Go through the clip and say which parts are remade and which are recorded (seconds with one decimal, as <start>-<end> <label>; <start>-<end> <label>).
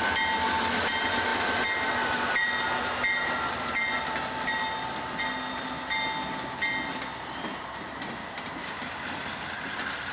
0.0-10.1 recorded